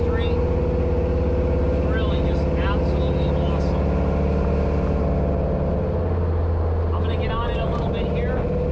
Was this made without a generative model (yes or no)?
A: yes